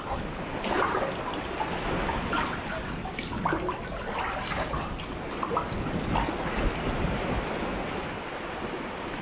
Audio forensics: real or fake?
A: real